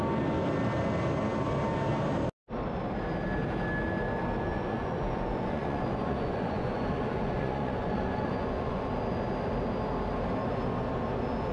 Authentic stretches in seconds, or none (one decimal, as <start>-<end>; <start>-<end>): 0.0-4.5; 8.9-11.5